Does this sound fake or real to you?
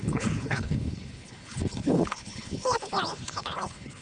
fake